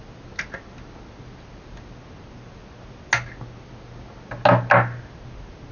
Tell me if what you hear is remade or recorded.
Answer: recorded